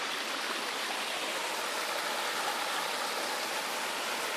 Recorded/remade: recorded